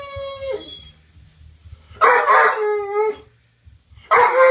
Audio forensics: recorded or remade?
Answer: recorded